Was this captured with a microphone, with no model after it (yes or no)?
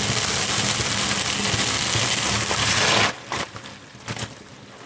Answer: yes